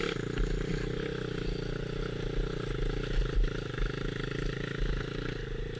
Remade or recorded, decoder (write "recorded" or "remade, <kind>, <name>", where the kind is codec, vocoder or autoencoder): recorded